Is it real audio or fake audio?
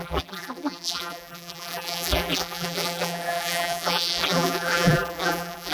fake